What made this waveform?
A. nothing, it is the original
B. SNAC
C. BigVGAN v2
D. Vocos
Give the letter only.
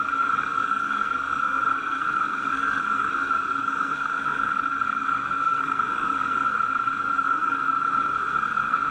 B